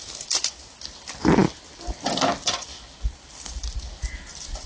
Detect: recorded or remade recorded